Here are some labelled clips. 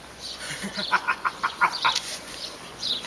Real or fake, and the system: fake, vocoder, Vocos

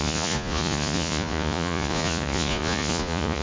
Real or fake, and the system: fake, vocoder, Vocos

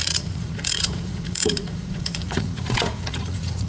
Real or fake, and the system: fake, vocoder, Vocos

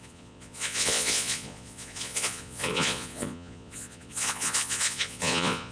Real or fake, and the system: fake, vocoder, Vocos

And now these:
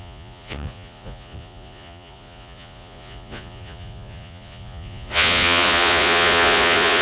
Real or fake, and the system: fake, vocoder, Vocos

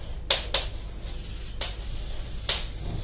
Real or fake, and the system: real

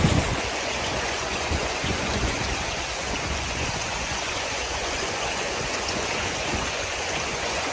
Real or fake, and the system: fake, vocoder, Vocos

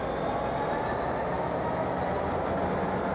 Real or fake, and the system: real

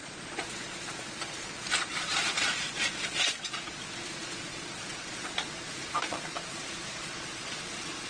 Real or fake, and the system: fake, vocoder, Vocos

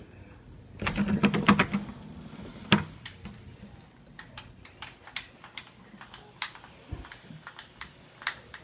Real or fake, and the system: real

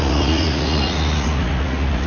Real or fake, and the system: fake, vocoder, Vocos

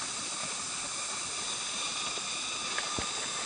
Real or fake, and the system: real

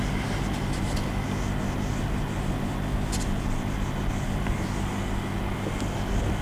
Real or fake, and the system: real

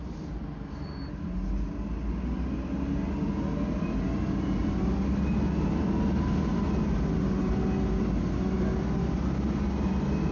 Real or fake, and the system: real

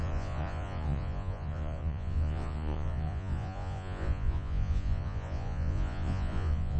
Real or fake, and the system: fake, vocoder, Vocos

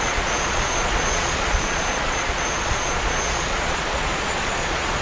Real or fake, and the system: fake, vocoder, Vocos